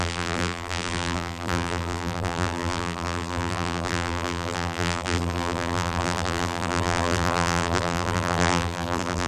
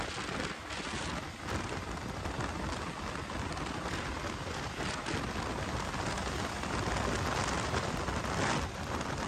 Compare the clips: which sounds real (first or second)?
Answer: second